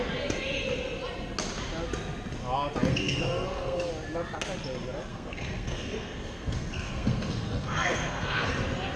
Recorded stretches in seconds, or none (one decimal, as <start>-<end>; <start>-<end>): 0.0-2.9; 3.9-5.1; 8.5-9.0